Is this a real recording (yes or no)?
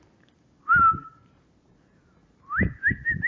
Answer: no